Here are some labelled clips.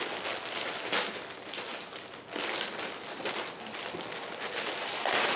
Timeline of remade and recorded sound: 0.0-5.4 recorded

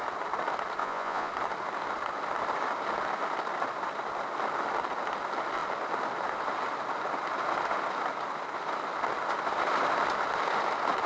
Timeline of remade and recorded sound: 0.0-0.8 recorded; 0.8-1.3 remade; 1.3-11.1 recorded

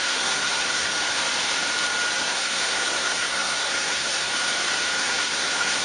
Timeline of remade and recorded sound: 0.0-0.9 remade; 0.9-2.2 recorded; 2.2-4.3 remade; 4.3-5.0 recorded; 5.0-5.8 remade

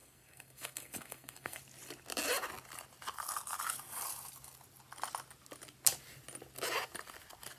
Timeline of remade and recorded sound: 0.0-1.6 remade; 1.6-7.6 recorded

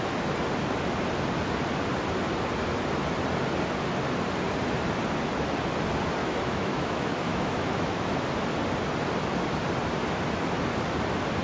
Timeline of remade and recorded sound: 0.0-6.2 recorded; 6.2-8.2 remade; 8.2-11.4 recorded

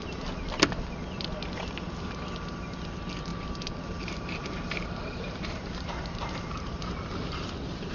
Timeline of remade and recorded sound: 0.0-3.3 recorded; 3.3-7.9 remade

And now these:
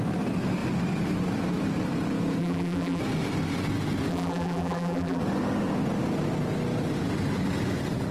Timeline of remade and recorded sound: 0.0-2.4 recorded; 2.4-3.0 remade; 3.0-4.1 recorded; 4.1-5.2 remade; 5.2-8.1 recorded